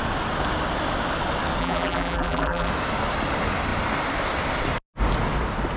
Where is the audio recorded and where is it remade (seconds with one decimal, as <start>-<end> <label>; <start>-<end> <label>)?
0.0-1.6 recorded; 1.6-2.7 remade; 2.7-5.8 recorded